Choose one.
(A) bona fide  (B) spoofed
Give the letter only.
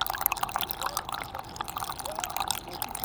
A